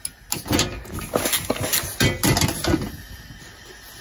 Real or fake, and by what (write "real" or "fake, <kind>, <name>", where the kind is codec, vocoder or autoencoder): real